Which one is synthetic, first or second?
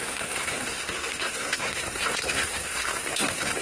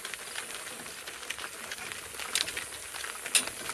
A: first